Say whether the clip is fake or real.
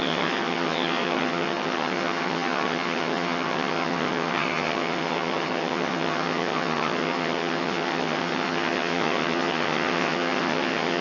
fake